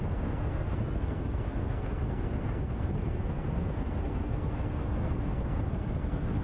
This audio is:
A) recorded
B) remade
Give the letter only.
B